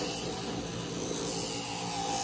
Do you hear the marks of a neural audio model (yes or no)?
no